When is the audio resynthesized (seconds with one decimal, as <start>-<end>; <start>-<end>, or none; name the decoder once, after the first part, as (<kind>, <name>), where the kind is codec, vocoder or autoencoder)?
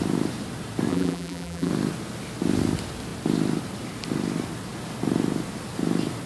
0.9-1.7 (vocoder, BigVGAN v2)